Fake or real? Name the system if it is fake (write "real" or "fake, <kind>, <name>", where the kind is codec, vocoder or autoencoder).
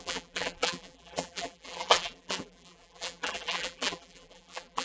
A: fake, vocoder, BigVGAN v2